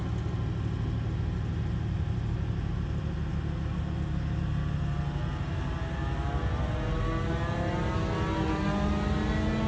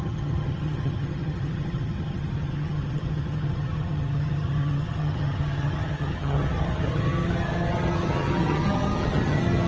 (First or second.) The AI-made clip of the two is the second